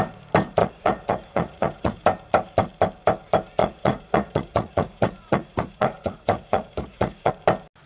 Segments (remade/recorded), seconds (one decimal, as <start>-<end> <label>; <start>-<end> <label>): 0.0-0.6 recorded; 0.6-2.0 remade; 2.0-3.6 recorded; 3.6-7.3 remade; 7.3-7.9 recorded